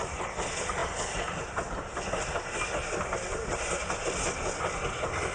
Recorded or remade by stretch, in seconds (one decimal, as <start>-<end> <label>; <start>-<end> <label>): 0.0-5.3 recorded

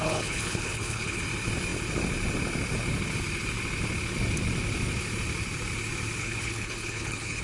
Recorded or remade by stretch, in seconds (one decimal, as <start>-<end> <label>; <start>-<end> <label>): 0.0-1.2 remade; 1.2-6.2 recorded; 6.2-7.4 remade

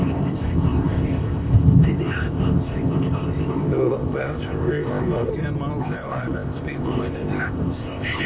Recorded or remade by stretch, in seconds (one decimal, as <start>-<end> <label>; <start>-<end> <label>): 0.0-5.3 remade; 5.3-5.8 recorded; 5.8-8.3 remade